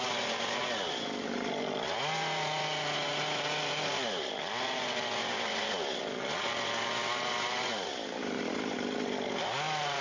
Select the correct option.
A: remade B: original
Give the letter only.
B